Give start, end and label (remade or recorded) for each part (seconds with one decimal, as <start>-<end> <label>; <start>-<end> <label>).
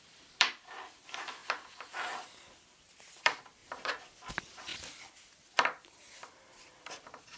0.0-1.4 remade; 1.4-2.8 recorded; 2.8-3.6 remade; 3.6-4.3 recorded; 4.3-7.4 remade